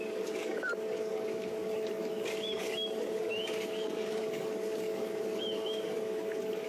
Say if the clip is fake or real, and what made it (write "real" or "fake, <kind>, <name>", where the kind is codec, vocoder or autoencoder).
fake, codec, DAC